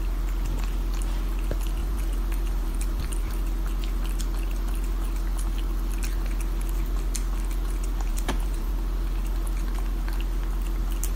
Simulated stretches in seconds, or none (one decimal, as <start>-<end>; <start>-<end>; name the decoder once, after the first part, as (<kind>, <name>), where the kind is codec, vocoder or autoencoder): 1.8-3.3 (vocoder, BigVGAN v2); 8.1-8.7